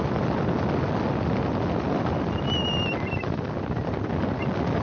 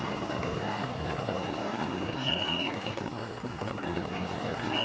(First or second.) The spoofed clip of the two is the second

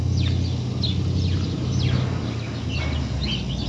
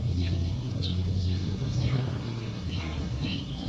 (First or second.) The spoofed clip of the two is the second